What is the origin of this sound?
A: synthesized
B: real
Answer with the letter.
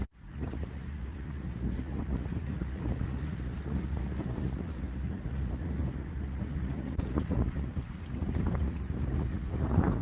A